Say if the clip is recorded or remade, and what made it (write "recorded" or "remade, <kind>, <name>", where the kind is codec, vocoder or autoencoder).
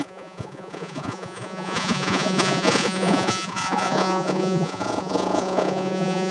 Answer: remade, vocoder, Vocos